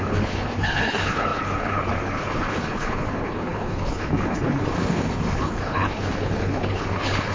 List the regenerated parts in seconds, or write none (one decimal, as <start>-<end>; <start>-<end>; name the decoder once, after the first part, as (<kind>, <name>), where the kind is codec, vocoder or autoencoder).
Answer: 0.0-7.3 (codec, HILCodec)